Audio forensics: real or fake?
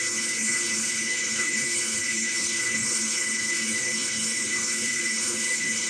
fake